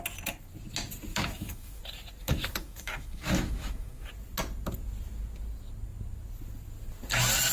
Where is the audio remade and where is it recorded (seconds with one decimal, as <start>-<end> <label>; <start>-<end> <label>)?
0.0-1.1 recorded; 1.1-1.8 remade; 1.8-2.2 recorded; 2.2-4.1 remade; 4.1-7.5 recorded